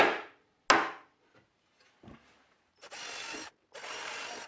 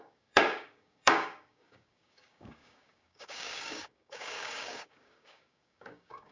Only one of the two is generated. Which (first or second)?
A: second